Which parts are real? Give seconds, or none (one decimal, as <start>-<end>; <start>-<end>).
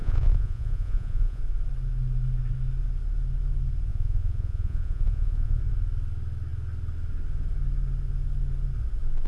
1.4-3.9; 5.6-9.3